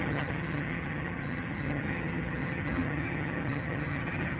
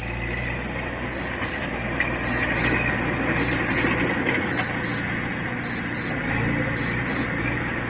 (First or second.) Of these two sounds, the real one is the second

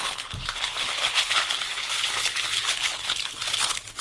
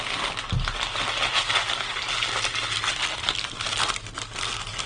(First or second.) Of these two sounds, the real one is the second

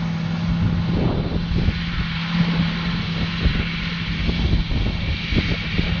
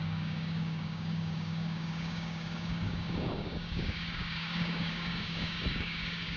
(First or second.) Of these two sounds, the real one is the first